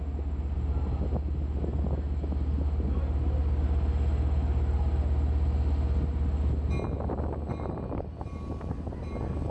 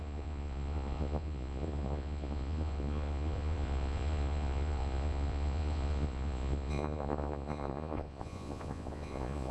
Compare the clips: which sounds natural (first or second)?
first